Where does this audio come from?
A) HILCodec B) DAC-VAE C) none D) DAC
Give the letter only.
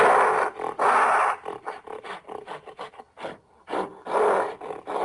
C